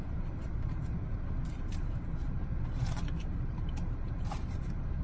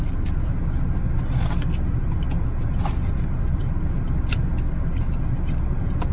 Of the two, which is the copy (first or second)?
first